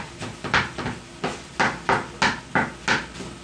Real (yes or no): yes